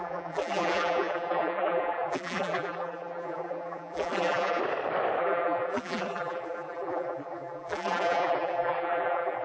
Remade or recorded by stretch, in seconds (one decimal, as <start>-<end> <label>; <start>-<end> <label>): 0.0-4.6 remade; 4.6-5.2 recorded; 5.2-9.4 remade